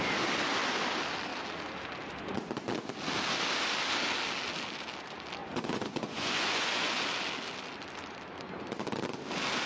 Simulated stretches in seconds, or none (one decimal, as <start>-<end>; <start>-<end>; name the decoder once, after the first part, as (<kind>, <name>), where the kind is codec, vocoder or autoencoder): 5.4-7.0 (vocoder, Vocos)